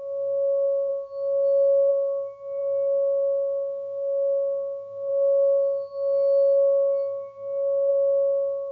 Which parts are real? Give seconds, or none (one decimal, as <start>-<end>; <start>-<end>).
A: 0.9-1.9; 7.9-8.7